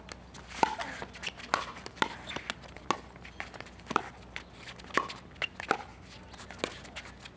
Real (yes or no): yes